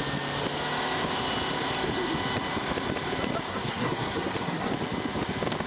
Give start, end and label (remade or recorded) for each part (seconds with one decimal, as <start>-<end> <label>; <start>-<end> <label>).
0.0-3.5 recorded; 3.5-4.7 remade; 4.7-5.7 recorded